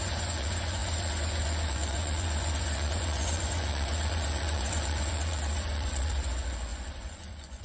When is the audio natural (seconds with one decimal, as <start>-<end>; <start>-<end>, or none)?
none